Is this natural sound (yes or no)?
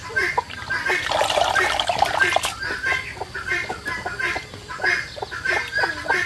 yes